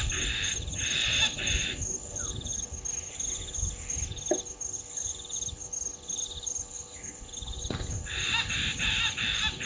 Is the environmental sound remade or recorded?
remade